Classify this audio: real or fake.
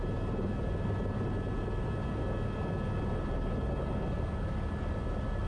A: real